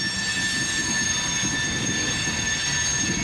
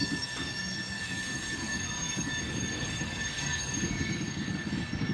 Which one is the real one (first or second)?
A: first